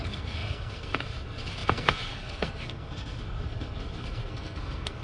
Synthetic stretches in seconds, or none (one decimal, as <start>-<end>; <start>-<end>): 0.0-5.0

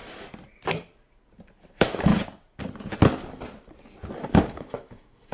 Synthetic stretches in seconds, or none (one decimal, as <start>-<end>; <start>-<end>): 1.7-2.1; 4.5-5.3

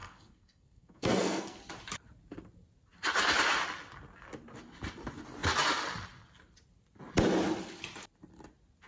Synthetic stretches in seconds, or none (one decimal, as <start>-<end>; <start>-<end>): 0.0-1.6

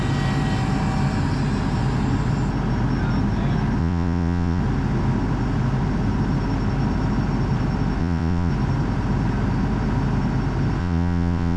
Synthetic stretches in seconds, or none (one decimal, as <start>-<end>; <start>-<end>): 3.8-4.6; 8.0-8.5; 10.8-11.6

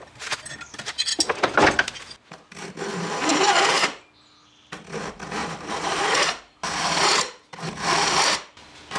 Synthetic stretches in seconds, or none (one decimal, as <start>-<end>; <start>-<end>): 5.4-6.0